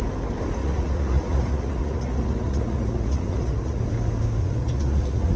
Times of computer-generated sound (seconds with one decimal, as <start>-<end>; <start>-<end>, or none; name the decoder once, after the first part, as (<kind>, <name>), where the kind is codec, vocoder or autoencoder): 0.6-3.8 (vocoder, Vocos); 4.4-5.4